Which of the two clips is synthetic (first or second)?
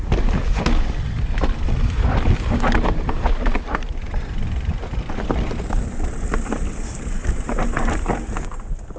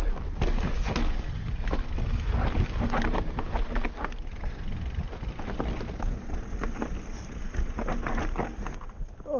first